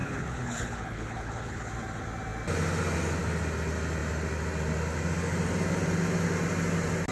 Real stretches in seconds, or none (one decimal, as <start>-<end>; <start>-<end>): 1.7-7.1

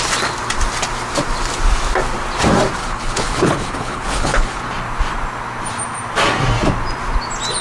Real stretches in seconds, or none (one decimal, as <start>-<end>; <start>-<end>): 0.0-2.8; 4.6-7.6

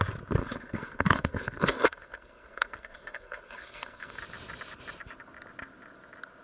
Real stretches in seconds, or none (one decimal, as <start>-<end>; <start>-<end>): 0.0-0.4; 4.2-6.4